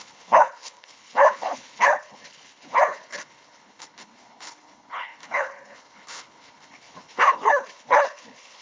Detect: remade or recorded remade